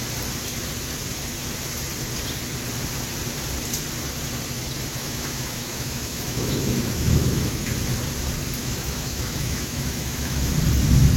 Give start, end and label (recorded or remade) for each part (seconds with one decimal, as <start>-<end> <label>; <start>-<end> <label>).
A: 0.0-4.9 recorded; 4.9-7.7 remade; 7.7-8.6 recorded; 8.6-10.5 remade; 10.5-11.2 recorded

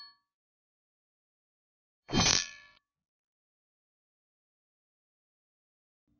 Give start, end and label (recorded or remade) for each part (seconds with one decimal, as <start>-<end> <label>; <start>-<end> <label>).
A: 0.0-2.3 recorded; 2.3-2.9 remade; 2.9-6.2 recorded

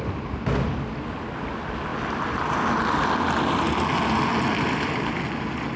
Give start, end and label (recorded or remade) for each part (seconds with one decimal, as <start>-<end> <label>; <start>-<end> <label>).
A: 0.0-5.8 recorded

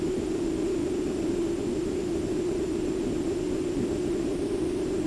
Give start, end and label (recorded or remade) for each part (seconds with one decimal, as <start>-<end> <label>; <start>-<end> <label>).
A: 0.0-5.1 recorded

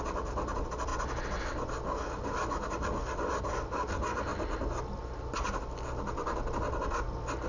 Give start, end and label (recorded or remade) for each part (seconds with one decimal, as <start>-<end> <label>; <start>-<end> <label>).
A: 0.0-7.5 recorded

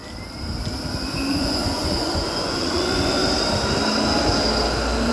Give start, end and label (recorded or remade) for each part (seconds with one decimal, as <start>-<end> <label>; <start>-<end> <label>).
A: 0.0-1.3 recorded; 1.3-3.2 remade; 3.2-5.1 recorded

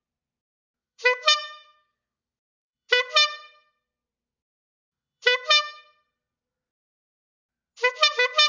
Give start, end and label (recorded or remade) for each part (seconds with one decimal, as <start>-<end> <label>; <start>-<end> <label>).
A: 0.0-0.8 recorded; 0.8-2.9 remade; 2.9-4.7 recorded; 4.7-5.8 remade; 5.8-8.5 recorded

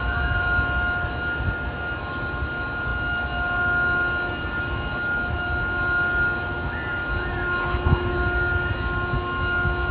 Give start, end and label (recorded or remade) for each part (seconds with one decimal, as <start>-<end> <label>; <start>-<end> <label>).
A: 0.0-9.9 recorded